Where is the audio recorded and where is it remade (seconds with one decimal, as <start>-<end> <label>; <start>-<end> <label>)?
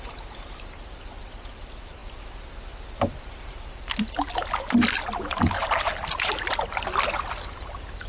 0.0-8.1 recorded